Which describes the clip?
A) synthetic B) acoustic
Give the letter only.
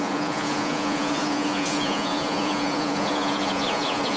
A